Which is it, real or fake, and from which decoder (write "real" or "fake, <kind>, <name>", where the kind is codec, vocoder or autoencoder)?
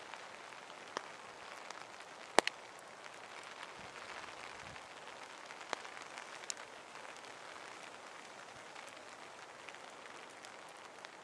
real